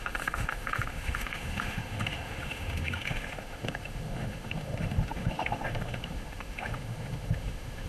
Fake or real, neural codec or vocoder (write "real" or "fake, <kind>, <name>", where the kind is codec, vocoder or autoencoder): fake, autoencoder, DAC-VAE